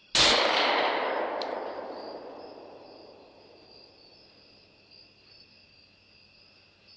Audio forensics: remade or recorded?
recorded